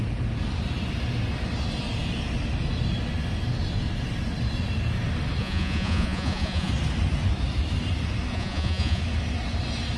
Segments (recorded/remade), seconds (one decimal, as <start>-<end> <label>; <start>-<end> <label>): 0.0-5.4 recorded; 5.4-6.7 remade; 6.7-8.3 recorded; 8.3-9.0 remade; 9.0-10.0 recorded